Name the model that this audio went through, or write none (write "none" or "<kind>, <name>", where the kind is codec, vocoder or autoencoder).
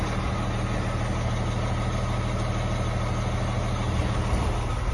none